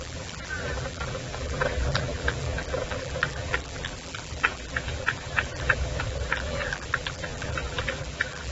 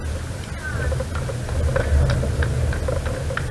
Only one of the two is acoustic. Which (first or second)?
second